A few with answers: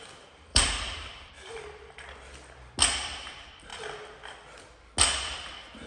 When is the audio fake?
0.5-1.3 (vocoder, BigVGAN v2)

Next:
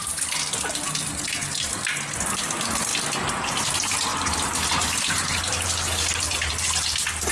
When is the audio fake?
4.1-7.3 (vocoder, BigVGAN v2)

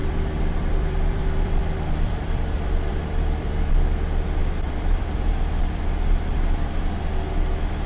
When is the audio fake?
0.0-3.7 (vocoder, BigVGAN v2); 4.4-7.0